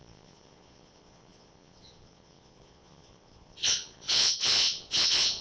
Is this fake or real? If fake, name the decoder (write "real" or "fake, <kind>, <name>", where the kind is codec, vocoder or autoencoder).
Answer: fake, vocoder, Vocos